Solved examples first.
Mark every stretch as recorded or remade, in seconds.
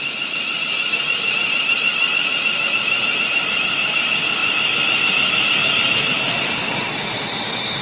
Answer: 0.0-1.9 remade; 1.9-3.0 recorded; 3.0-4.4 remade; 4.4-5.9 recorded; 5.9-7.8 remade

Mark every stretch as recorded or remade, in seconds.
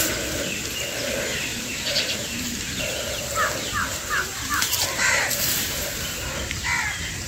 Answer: 0.0-1.5 recorded; 1.5-2.8 remade; 2.8-4.3 recorded; 4.3-7.3 remade